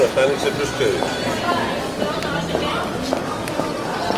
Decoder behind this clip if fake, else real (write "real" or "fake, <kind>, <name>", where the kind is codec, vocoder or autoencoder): real